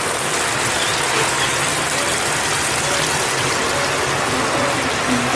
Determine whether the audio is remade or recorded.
recorded